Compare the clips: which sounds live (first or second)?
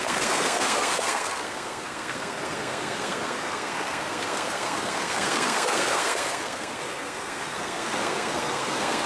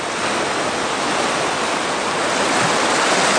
second